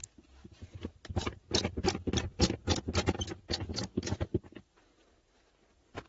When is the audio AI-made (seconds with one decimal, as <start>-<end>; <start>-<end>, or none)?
none